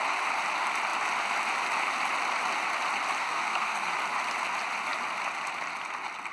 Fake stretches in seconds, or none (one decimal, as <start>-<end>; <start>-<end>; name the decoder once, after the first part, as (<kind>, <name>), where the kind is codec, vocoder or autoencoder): 3.2-3.9 (codec, SNAC)